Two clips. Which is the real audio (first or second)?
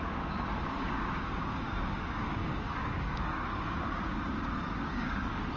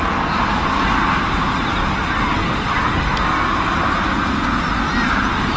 second